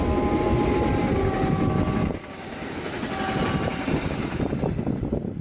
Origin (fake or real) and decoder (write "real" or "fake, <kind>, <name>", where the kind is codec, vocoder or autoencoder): real